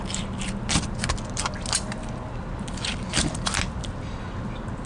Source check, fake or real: real